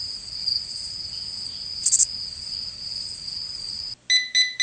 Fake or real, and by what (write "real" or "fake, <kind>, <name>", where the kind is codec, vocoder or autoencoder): real